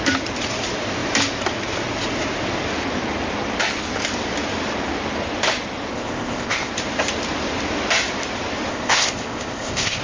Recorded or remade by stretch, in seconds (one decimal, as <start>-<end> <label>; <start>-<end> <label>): 0.0-5.9 recorded; 5.9-6.7 remade; 6.7-8.7 recorded; 8.7-10.0 remade